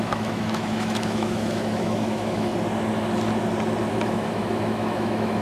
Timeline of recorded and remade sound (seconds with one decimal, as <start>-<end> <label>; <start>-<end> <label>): 0.0-2.5 remade; 2.5-3.9 recorded; 3.9-5.4 remade